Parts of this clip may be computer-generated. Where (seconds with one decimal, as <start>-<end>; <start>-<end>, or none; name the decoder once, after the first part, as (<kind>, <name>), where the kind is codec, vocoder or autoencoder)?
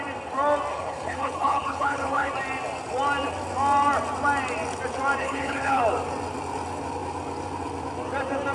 0.7-2.3 (codec, HILCodec); 5.2-5.8